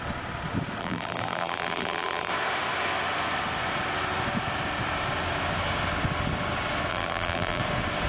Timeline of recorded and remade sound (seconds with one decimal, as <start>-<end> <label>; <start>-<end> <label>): 0.0-0.8 recorded; 0.8-2.3 remade; 2.3-6.9 recorded; 6.9-7.6 remade; 7.6-8.1 recorded